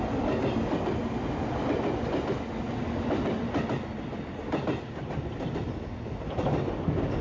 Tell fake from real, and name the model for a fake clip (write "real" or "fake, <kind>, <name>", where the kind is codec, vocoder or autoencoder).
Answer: real